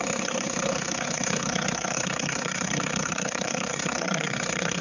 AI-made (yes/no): yes